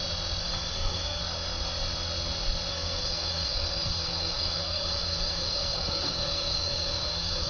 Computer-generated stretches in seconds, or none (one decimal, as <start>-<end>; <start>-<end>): 0.4-1.2; 2.7-7.5

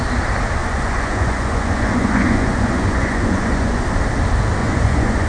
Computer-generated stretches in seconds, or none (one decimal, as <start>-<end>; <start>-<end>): 0.6-3.8; 4.6-5.3